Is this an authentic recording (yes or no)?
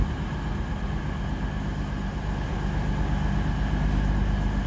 yes